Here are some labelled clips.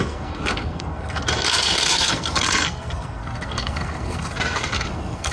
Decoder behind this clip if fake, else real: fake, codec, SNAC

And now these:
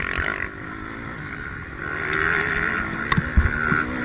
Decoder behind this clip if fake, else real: real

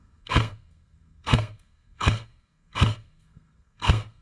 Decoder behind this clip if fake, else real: fake, codec, SNAC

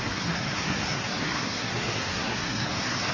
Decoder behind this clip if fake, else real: fake, codec, SNAC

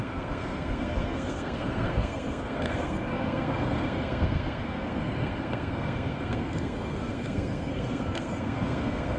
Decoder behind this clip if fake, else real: fake, codec, SNAC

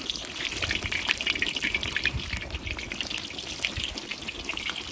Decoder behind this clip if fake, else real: real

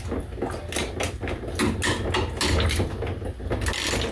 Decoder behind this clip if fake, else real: real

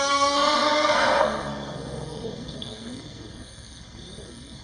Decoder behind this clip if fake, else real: fake, codec, SNAC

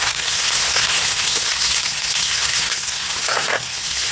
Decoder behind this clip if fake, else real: fake, codec, SNAC